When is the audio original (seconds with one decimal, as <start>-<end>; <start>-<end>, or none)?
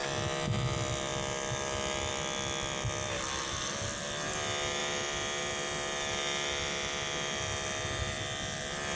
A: 0.0-9.0